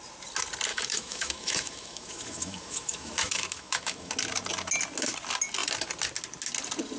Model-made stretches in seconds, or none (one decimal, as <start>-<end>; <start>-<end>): 0.7-4.1